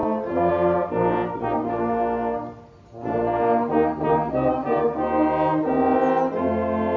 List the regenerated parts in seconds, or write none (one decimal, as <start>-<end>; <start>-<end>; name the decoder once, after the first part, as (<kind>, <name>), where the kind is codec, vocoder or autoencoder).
none